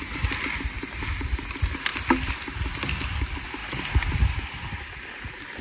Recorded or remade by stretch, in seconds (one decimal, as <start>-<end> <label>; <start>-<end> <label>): 0.0-1.9 recorded; 1.9-2.4 remade; 2.4-3.6 recorded; 3.6-4.3 remade; 4.3-5.6 recorded